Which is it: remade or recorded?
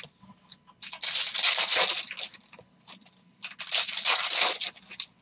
recorded